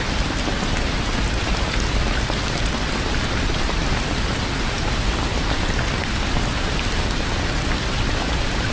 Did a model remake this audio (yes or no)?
no